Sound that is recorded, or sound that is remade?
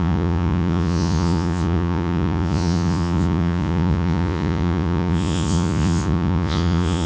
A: remade